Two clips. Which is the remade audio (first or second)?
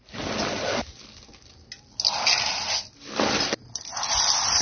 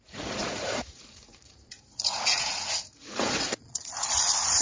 second